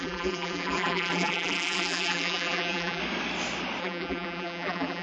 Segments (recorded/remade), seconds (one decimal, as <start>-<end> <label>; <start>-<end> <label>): 0.0-3.0 remade; 3.0-3.8 recorded; 3.8-5.0 remade